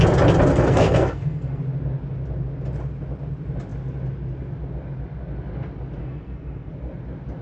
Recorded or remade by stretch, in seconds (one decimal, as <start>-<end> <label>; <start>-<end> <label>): 0.0-0.5 recorded; 0.5-1.6 remade; 1.6-6.0 recorded; 6.0-6.7 remade; 6.7-7.4 recorded